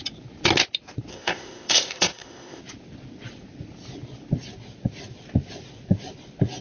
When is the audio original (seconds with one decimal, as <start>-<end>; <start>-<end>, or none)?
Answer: 0.0-1.1; 2.6-6.6